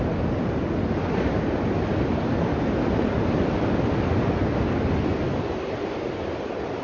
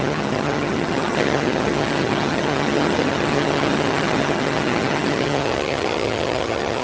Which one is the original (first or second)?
first